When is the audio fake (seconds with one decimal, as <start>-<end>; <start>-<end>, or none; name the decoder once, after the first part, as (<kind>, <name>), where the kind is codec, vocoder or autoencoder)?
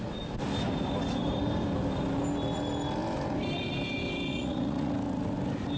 4.3-4.9 (vocoder, Vocos)